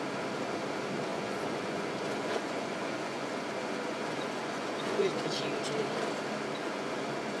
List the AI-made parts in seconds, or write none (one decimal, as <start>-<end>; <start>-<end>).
1.1-5.4; 6.6-7.4